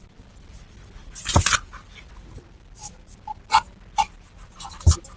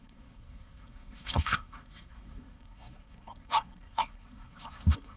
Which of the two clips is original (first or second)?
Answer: first